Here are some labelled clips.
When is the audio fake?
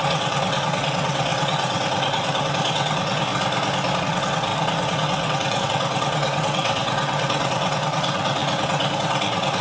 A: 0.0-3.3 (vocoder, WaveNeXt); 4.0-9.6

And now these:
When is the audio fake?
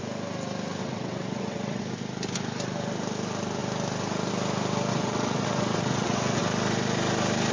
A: 0.8-1.8 (vocoder, WaveNeXt); 4.9-6.4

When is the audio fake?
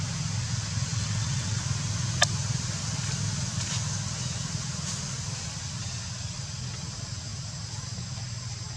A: 0.9-1.6 (vocoder, WaveNeXt)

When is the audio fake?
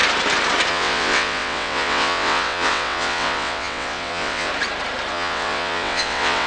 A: 0.7-4.5 (vocoder, WaveNeXt); 5.1-6.5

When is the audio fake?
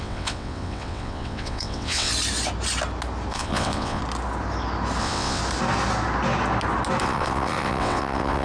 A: 0.0-2.1 (vocoder, WaveNeXt); 3.3-4.0; 5.0-5.4; 7.0-8.4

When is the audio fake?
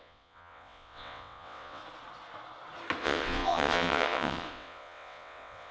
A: 0.0-1.8 (vocoder, WaveNeXt); 3.0-5.7